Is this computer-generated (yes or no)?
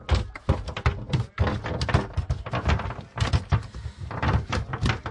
no